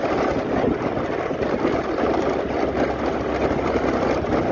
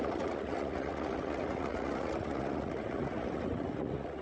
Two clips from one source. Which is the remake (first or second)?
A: second